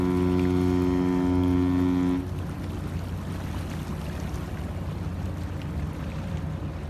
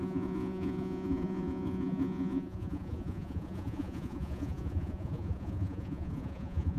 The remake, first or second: second